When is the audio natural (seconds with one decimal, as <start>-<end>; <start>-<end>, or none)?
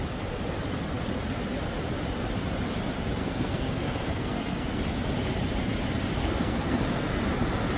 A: 0.0-3.2; 4.8-6.2; 7.2-7.8